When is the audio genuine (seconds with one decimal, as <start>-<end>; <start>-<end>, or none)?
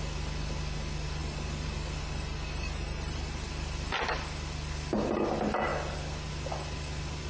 0.0-7.3